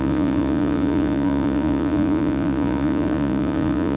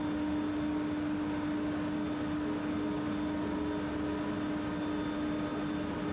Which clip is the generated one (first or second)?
first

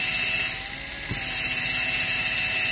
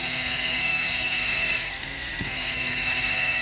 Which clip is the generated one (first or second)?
second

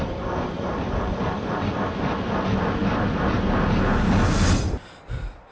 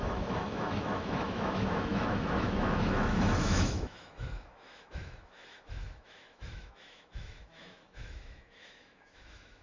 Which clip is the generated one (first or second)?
second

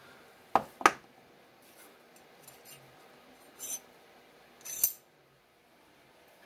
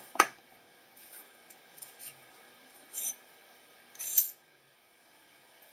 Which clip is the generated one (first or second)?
second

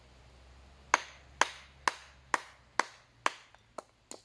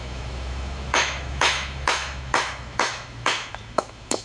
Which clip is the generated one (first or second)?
second